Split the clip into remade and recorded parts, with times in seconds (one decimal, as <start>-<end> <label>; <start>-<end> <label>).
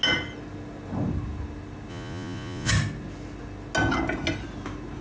0.0-1.9 recorded; 1.9-2.7 remade; 2.7-5.0 recorded